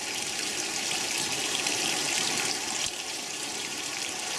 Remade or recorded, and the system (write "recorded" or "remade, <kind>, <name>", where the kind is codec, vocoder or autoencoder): remade, vocoder, BigVGAN v2